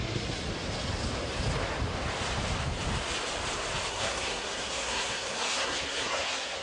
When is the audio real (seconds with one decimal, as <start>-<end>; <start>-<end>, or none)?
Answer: 0.5-3.9